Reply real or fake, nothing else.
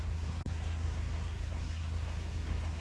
fake